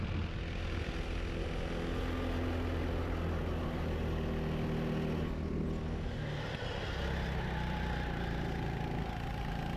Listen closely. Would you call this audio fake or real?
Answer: real